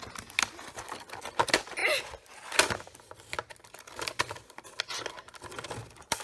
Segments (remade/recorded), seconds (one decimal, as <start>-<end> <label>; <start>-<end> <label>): 0.0-6.2 recorded